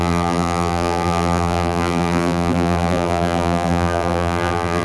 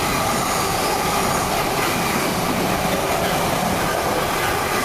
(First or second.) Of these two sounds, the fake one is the first